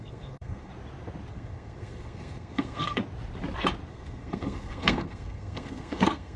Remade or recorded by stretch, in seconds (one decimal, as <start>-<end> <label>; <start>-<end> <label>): 0.0-0.7 remade; 0.7-1.3 recorded; 1.3-3.0 remade; 3.0-3.9 recorded; 3.9-6.4 remade